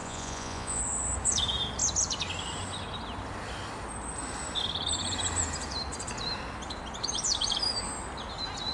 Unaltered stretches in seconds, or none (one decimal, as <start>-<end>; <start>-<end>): 0.8-8.7